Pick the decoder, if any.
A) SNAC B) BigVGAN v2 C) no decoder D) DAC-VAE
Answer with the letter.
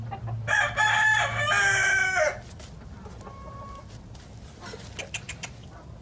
C